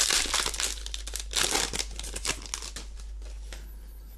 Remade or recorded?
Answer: recorded